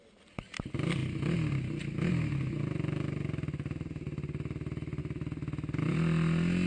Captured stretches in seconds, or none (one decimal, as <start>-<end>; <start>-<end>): 0.0-6.7